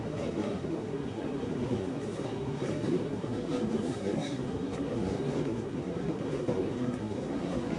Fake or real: fake